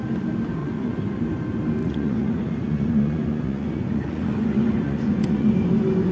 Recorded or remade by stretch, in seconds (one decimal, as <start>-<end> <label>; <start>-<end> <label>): 0.0-0.6 recorded; 0.6-1.2 remade; 1.2-1.8 recorded; 1.8-5.5 remade; 5.5-6.1 recorded